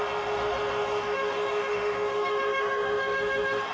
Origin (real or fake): fake